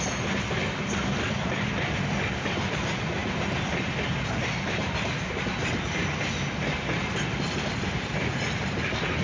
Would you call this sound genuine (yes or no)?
yes